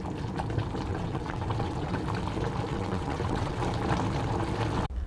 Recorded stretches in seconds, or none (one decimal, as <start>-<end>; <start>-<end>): 0.0-0.9; 2.0-2.7; 3.6-5.1